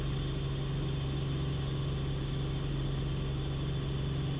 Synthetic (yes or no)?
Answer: no